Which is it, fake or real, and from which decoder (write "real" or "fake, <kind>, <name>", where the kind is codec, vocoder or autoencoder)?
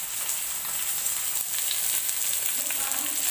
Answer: real